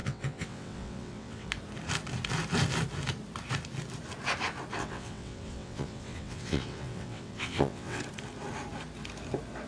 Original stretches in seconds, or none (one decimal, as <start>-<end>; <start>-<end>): 1.5-4.8; 8.0-9.7